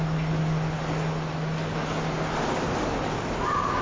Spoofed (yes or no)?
no